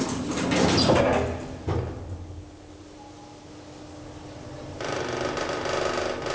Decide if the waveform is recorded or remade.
recorded